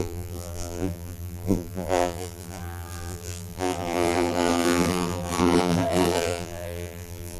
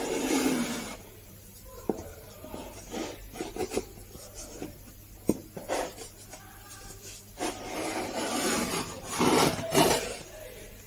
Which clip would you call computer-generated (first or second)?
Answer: first